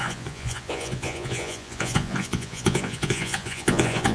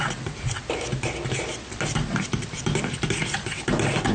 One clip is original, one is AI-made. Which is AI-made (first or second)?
first